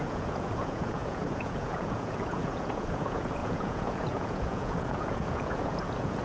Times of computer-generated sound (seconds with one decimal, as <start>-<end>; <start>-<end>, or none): 0.0-6.2